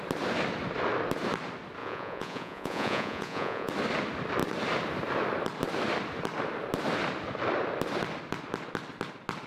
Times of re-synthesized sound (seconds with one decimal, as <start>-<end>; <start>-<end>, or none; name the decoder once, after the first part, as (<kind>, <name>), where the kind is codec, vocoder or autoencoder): 1.8-3.7 (vocoder, Vocos)